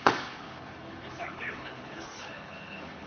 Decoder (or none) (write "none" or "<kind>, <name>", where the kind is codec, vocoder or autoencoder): codec, HILCodec